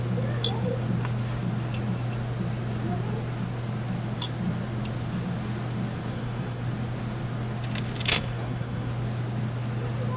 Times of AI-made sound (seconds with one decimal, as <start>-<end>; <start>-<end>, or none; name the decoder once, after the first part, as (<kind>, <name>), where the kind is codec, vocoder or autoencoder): 6.1-6.6 (codec, SNAC); 8.1-8.9